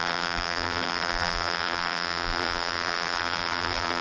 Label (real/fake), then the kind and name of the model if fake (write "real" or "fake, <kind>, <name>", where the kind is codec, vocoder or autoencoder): fake, vocoder, BigVGAN v2